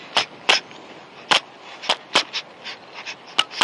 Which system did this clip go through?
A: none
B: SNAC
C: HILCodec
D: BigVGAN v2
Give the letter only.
A